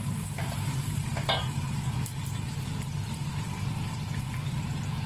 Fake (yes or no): yes